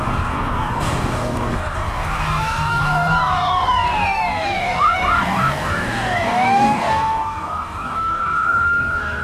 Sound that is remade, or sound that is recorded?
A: remade